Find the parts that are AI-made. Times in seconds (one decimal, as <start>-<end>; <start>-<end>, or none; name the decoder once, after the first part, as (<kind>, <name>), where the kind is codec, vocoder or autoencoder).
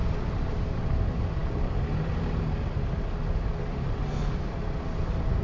none